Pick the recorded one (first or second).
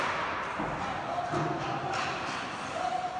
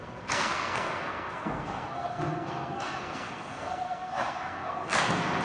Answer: first